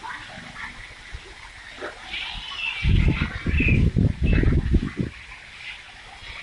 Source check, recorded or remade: recorded